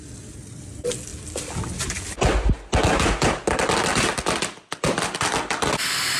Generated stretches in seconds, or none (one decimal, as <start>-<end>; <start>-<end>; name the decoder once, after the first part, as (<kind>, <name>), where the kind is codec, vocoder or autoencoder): none